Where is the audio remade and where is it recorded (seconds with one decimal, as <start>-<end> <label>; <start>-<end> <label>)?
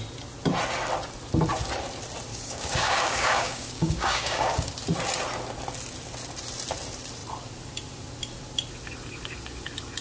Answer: 0.0-2.3 recorded; 2.3-4.7 remade; 4.7-10.0 recorded